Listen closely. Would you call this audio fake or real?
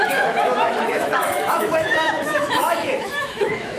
fake